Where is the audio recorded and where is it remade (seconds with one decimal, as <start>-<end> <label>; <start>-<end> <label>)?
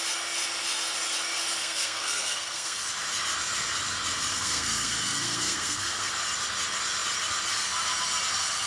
0.0-1.6 recorded; 1.6-2.8 remade; 2.8-4.3 recorded; 4.3-6.1 remade; 6.1-8.7 recorded